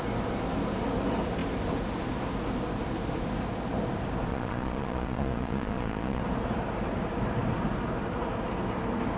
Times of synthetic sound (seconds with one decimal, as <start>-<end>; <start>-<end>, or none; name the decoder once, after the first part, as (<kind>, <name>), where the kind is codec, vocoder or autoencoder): 4.3-6.2 (vocoder, Vocos)